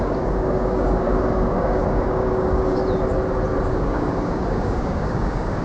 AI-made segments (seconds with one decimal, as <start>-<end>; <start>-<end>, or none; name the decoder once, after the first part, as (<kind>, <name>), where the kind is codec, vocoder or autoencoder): 0.0-2.8 (codec, DAC); 3.6-5.6